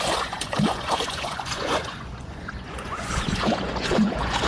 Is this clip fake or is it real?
fake